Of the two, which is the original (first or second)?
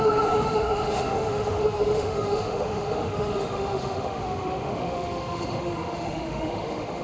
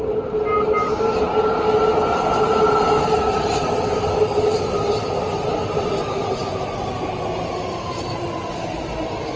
second